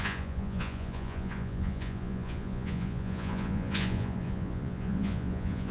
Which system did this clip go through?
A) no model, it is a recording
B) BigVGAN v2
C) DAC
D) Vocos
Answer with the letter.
D